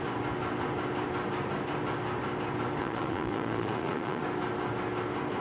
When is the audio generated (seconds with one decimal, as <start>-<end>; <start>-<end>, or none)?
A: 2.8-4.2